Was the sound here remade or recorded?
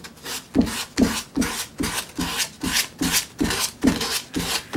recorded